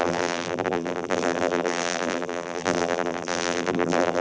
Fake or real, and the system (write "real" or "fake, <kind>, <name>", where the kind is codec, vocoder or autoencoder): fake, vocoder, BigVGAN v2